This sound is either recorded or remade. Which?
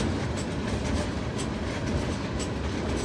recorded